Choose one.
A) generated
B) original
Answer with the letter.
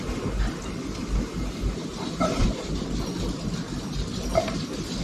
B